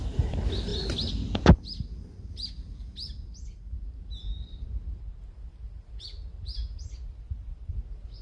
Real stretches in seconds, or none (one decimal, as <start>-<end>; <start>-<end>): 0.0-8.2